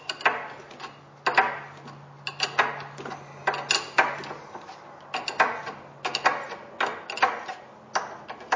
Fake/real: real